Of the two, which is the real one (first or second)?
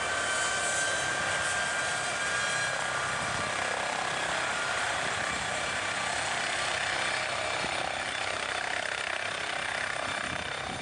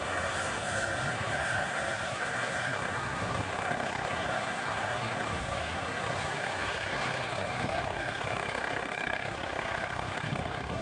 first